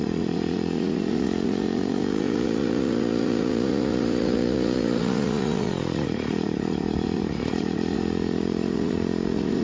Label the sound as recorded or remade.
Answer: remade